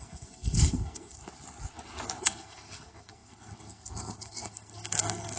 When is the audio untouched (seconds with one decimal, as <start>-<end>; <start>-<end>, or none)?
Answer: 1.2-2.2

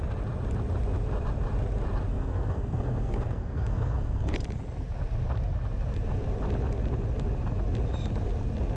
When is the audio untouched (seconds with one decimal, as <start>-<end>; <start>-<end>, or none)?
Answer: 0.0-2.1; 4.3-8.8

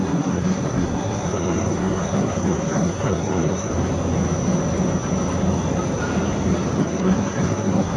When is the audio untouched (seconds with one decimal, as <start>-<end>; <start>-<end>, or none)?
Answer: 3.7-6.8

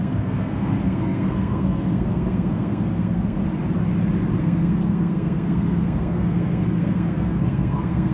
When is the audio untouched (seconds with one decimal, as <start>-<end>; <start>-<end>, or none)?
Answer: 3.4-4.4

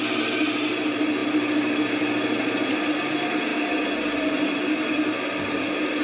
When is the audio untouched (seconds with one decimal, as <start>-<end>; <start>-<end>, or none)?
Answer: 0.0-6.0

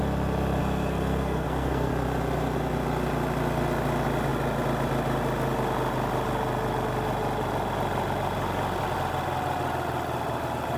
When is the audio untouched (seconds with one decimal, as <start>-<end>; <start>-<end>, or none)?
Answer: 0.0-0.6; 1.9-10.8

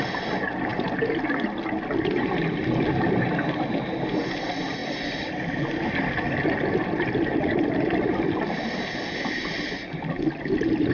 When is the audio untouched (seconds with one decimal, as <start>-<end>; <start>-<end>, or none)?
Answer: 0.0-10.9

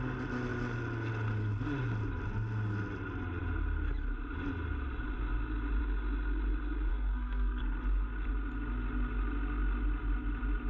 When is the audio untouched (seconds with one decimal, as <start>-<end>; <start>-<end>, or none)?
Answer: 0.0-6.9; 7.6-10.7